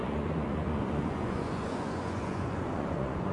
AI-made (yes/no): yes